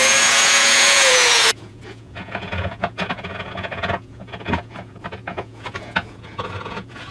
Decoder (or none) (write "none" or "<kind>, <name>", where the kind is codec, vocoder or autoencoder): vocoder, Vocos